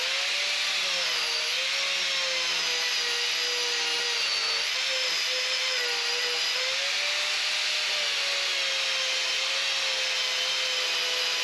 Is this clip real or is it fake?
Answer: real